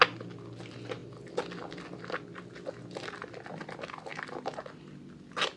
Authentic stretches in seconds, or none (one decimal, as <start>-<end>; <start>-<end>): 0.0-5.6